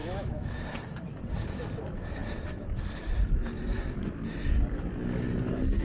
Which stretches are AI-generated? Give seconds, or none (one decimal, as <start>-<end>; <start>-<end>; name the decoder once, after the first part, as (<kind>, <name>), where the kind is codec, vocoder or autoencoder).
0.0-0.6 (autoencoder, DAC-VAE)